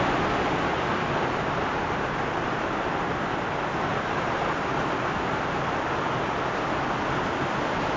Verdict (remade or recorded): recorded